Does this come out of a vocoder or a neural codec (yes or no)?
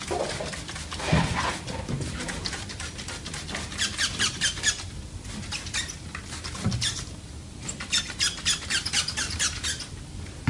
no